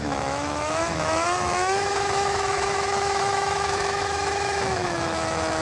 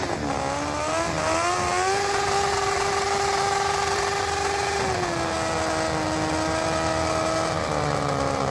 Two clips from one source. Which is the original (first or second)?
second